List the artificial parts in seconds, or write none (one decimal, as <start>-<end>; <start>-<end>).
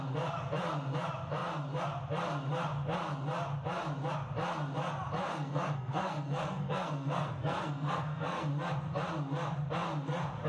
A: 5.3-8.5